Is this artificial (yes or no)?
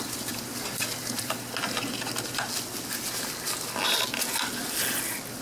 no